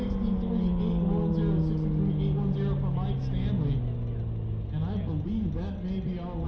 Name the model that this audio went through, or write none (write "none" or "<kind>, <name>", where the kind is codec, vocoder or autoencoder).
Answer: none